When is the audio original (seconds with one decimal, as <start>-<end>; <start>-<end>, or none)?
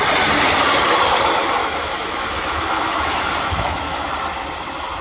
0.0-1.6; 4.1-5.0